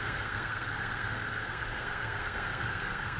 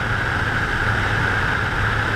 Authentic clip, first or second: second